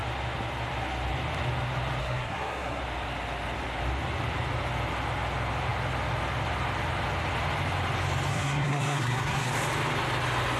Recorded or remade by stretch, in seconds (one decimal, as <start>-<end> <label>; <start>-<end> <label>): 0.0-2.0 recorded; 2.0-2.8 remade; 2.8-8.3 recorded; 8.3-9.5 remade; 9.5-10.6 recorded